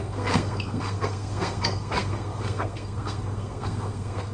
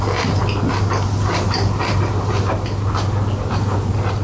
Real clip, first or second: second